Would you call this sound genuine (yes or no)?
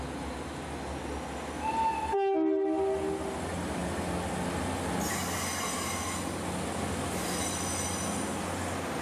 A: yes